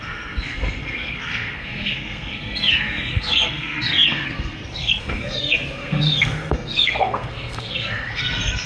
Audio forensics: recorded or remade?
remade